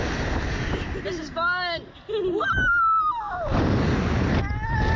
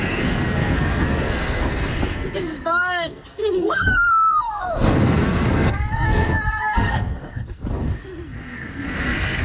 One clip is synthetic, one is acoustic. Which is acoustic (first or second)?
first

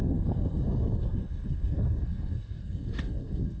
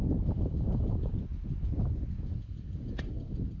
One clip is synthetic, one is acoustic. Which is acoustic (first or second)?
second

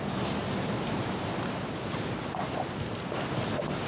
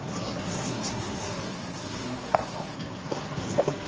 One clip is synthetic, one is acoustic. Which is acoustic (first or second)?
first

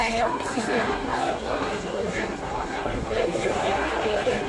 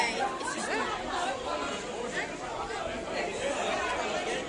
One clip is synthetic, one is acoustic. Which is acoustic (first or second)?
second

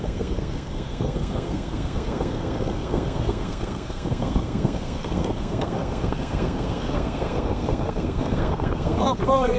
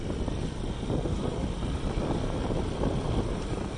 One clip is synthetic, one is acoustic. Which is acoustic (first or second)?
second